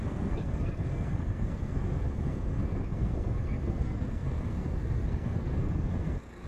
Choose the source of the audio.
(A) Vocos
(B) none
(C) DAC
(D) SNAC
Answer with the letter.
D